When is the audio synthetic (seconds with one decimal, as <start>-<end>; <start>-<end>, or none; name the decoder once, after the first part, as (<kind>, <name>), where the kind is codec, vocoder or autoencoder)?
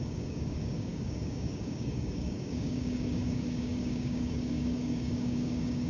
0.0-5.9 (codec, DAC)